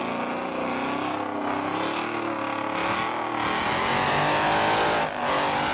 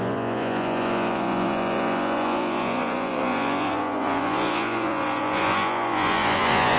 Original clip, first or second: first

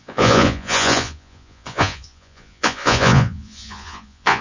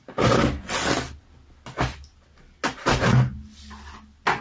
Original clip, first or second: second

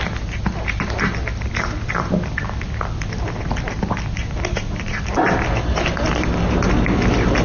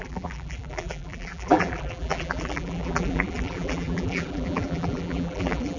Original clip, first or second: first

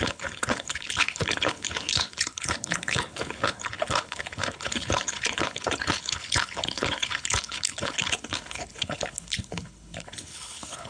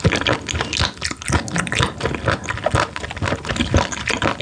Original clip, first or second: second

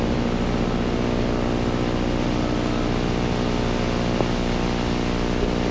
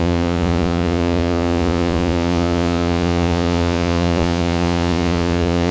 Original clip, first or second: first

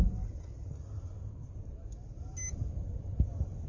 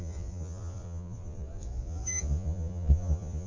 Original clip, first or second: first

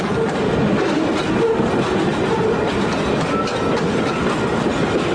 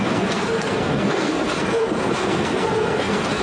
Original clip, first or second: first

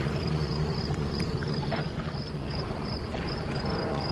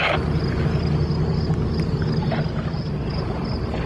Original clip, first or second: second